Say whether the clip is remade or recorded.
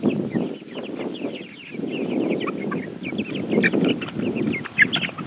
recorded